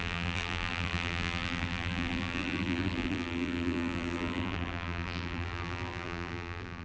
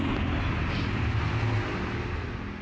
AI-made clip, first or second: first